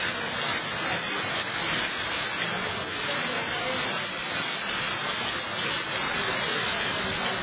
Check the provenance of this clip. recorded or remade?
recorded